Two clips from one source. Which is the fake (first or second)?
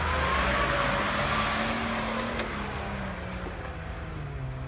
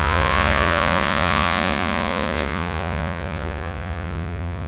second